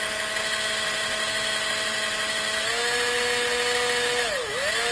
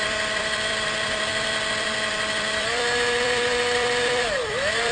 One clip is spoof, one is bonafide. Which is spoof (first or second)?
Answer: second